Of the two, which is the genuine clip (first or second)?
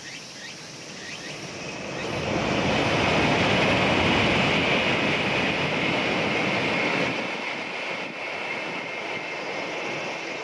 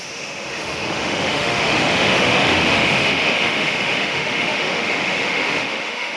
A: first